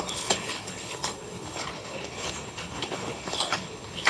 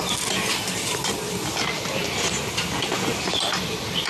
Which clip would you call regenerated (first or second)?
first